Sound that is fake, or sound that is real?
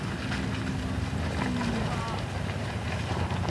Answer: real